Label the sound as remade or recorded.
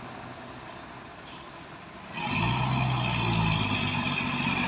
recorded